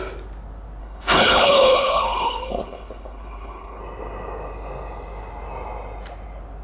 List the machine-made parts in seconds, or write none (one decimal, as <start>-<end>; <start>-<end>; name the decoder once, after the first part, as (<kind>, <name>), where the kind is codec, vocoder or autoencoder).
0.8-3.8 (codec, HILCodec)